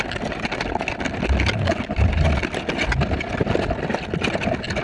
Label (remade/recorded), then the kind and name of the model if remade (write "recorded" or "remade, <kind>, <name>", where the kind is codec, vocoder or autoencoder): recorded